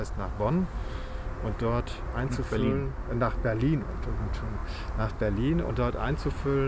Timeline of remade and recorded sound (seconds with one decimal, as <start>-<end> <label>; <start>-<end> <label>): 0.0-6.7 recorded